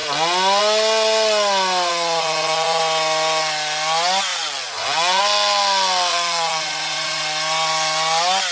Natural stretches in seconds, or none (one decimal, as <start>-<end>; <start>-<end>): 0.0-1.9; 2.8-4.3; 5.2-6.1; 7.2-8.5